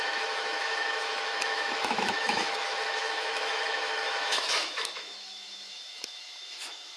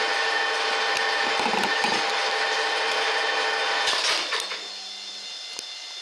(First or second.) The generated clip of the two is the first